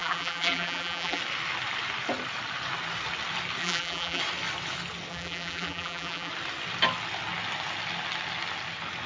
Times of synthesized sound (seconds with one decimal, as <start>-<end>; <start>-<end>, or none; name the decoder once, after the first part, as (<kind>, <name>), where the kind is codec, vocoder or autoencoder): 0.0-1.2 (vocoder, BigVGAN v2); 3.6-4.2; 5.1-6.3